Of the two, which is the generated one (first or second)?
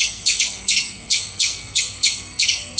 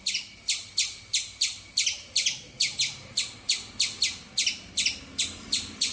first